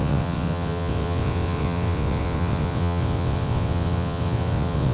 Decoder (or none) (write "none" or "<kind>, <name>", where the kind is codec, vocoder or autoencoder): vocoder, WaveNeXt